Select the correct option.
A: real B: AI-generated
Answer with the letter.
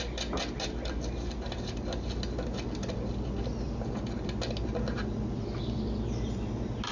A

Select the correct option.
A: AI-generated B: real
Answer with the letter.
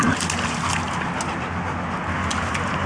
B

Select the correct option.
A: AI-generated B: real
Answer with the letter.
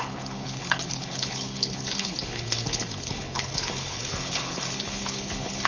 A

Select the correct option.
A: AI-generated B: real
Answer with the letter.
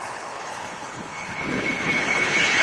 A